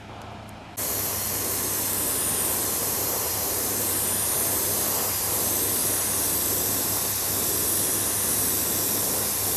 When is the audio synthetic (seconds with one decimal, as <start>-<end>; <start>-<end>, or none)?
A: 2.8-4.3